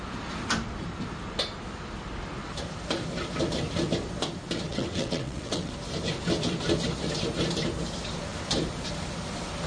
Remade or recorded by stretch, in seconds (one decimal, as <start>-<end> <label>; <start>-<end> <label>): 0.0-4.7 recorded; 4.7-5.7 remade; 5.7-9.7 recorded